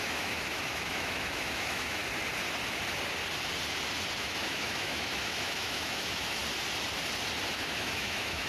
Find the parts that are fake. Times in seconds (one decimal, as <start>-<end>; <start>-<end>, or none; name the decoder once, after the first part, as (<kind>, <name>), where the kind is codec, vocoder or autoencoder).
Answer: 0.0-2.0 (autoencoder, DAC-VAE); 4.2-6.4; 7.5-8.5